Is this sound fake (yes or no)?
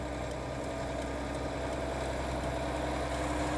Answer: no